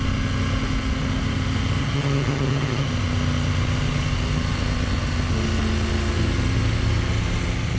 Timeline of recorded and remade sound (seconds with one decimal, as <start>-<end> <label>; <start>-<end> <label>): 0.0-1.8 recorded; 1.8-2.9 remade; 2.9-7.8 recorded